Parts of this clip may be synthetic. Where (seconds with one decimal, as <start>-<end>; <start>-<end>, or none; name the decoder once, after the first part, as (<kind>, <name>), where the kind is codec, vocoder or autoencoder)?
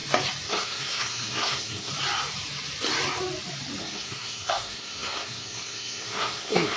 0.5-1.9 (codec, SNAC); 3.8-6.8